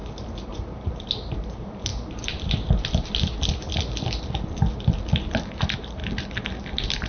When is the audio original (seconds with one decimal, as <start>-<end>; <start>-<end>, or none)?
1.9-5.3; 6.0-6.6